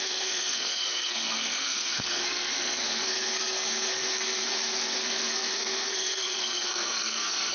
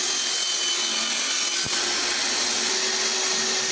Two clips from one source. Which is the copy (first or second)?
first